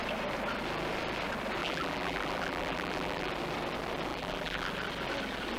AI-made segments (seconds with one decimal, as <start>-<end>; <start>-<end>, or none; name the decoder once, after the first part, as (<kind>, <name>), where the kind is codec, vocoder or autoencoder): 1.6-3.3 (vocoder, BigVGAN v2); 4.1-4.7